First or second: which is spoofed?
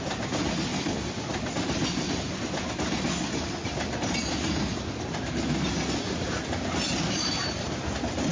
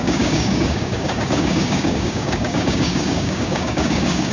second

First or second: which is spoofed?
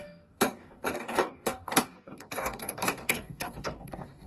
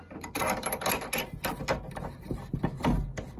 first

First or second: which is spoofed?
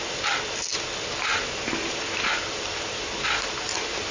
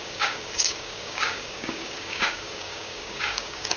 second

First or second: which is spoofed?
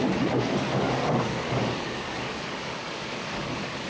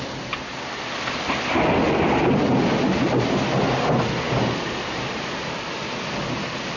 first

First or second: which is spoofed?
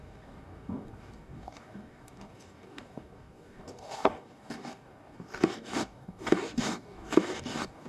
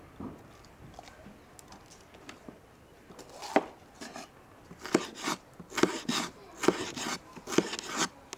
first